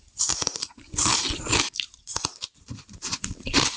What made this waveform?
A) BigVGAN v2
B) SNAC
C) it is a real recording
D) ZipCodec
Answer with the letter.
A